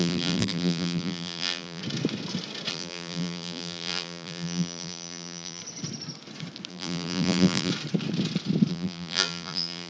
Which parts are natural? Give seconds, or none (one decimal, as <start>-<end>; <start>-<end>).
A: 1.8-2.7; 5.6-6.7; 7.7-8.7